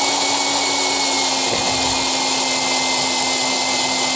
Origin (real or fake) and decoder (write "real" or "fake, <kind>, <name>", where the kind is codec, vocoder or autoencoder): real